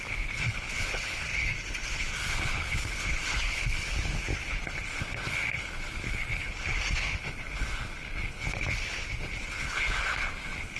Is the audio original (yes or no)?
no